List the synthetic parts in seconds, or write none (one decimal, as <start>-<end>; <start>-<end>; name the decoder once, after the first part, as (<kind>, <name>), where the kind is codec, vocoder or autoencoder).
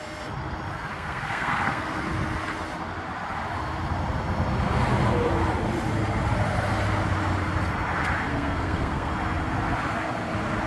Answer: 0.9-2.0 (codec, SNAC); 8.3-9.1